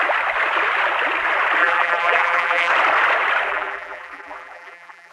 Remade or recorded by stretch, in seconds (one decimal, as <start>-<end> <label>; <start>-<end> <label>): 0.0-1.6 recorded; 1.6-2.7 remade; 2.7-3.5 recorded; 3.5-5.1 remade